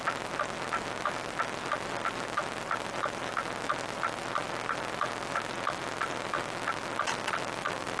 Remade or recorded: recorded